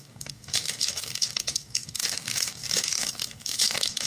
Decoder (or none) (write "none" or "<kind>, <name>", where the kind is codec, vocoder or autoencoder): codec, DAC